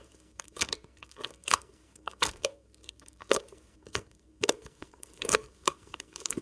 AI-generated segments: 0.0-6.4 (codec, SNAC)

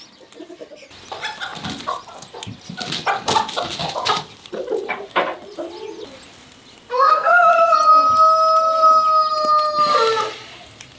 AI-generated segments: 6.9-7.5 (codec, SNAC)

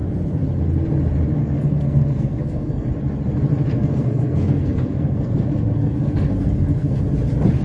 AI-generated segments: 1.4-2.9 (codec, SNAC); 3.7-7.0

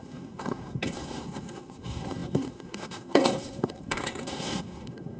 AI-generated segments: 0.0-5.2 (codec, SNAC)